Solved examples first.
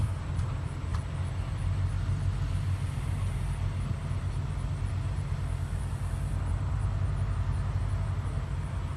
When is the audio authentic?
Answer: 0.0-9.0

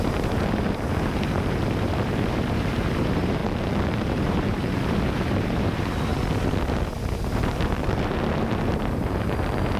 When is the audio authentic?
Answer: 3.4-3.9; 6.1-7.2

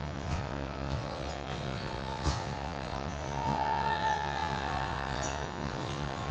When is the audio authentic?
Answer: none

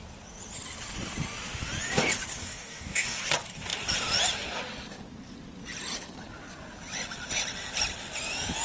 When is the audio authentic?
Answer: 0.0-2.4; 3.2-8.6

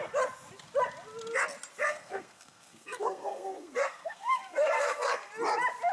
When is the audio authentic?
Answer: 0.0-1.8; 5.3-5.9